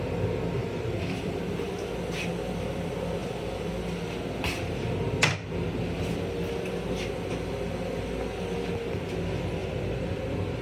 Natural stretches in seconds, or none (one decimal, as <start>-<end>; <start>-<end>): 0.0-0.6; 1.4-3.2; 3.7-9.6; 10.2-10.6